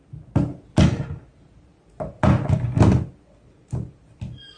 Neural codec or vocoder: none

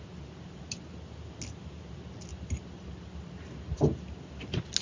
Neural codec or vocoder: none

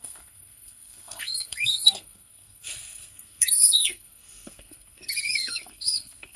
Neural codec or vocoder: codec, SNAC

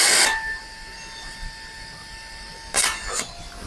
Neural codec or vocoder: none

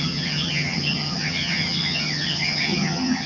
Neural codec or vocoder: vocoder, HiFi-GAN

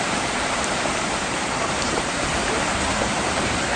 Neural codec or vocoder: vocoder, BigVGAN v2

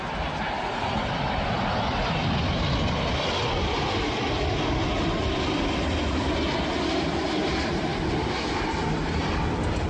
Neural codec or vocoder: none